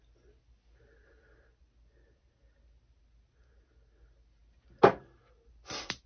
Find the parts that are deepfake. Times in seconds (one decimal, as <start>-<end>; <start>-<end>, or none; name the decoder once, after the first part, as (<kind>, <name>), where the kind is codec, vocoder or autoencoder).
none